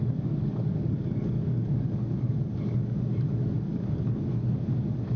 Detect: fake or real fake